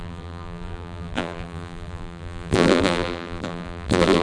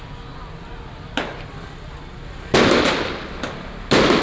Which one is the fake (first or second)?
first